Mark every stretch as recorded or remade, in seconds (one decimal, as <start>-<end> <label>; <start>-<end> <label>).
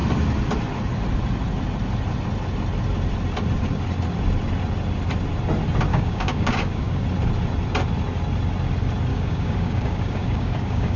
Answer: 0.0-5.9 recorded; 5.9-7.0 remade; 7.0-9.1 recorded; 9.1-11.0 remade